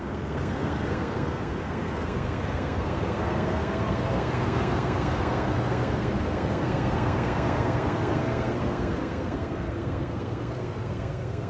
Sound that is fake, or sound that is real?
fake